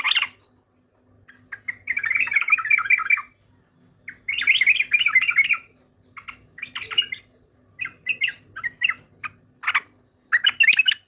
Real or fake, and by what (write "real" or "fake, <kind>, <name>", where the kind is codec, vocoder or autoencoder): real